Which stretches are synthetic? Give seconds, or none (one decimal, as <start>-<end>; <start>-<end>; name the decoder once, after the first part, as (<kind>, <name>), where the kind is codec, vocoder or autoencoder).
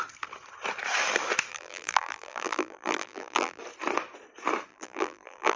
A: 1.5-3.6 (vocoder, BigVGAN v2); 4.7-5.6